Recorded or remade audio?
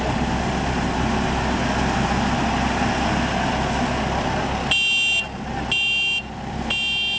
recorded